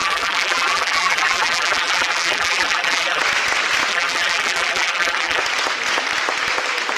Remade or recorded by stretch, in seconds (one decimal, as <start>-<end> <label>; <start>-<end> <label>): 0.0-3.2 remade; 3.2-3.9 recorded; 3.9-5.4 remade; 5.4-7.0 recorded